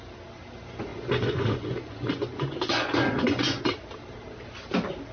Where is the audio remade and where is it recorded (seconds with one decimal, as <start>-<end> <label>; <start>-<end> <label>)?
0.0-0.9 recorded; 0.9-3.6 remade; 3.6-5.1 recorded